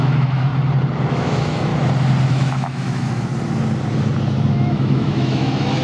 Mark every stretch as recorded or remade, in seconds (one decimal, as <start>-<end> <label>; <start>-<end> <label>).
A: 0.0-0.5 remade; 0.5-1.1 recorded; 1.1-1.7 remade; 1.7-2.3 recorded; 2.3-3.3 remade; 3.3-4.5 recorded; 4.5-5.8 remade